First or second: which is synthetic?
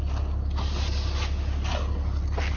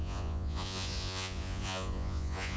second